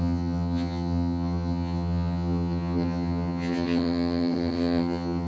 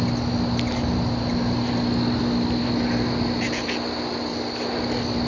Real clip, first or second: second